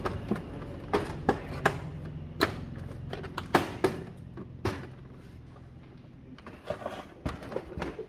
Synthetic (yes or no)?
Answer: no